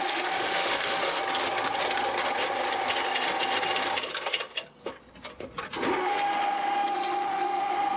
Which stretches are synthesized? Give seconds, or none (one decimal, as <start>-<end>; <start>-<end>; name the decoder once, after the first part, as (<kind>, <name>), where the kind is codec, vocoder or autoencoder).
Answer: 0.0-1.2 (autoencoder, DAC-VAE); 6.0-8.0